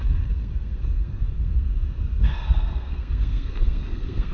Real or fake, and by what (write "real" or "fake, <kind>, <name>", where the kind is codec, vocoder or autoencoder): fake, codec, SNAC